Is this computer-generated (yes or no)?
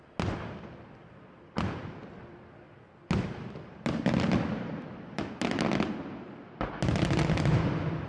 no